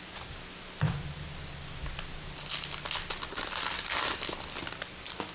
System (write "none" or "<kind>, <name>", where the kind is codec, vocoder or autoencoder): none